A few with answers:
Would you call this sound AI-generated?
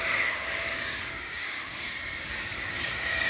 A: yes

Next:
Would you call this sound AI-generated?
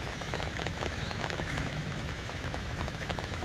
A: yes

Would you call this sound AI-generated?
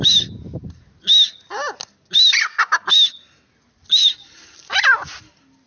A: no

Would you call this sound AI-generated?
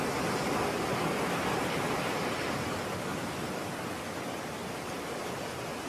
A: no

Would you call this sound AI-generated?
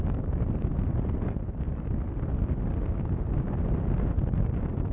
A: no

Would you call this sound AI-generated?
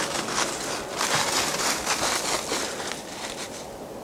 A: no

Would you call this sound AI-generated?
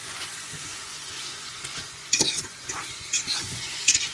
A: yes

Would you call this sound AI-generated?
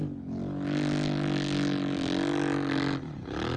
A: no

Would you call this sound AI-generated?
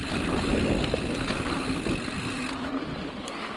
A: no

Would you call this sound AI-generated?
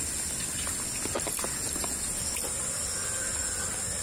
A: no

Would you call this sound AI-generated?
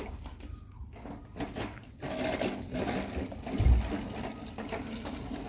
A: no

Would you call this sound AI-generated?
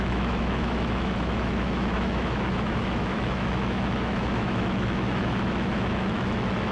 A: yes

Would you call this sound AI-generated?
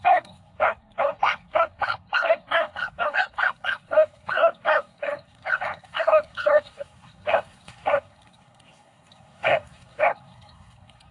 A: yes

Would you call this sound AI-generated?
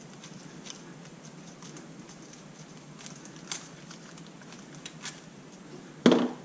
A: no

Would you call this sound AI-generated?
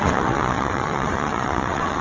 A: yes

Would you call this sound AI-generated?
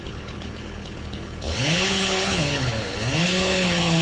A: yes